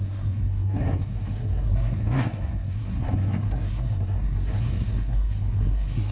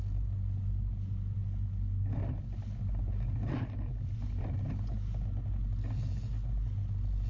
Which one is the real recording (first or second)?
second